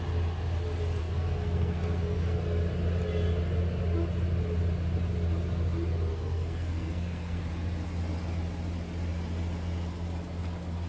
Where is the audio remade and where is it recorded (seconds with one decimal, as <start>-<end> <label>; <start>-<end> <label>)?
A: 0.0-1.0 recorded; 1.0-2.4 remade; 2.4-6.1 recorded; 6.1-7.4 remade; 7.4-10.9 recorded